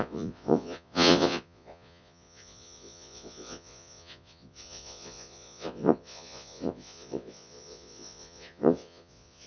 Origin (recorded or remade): remade